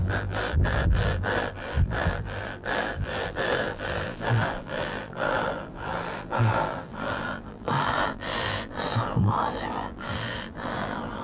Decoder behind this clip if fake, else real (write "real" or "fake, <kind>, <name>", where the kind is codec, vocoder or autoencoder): fake, vocoder, BigVGAN v2